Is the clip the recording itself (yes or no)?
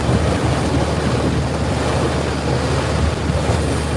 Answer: yes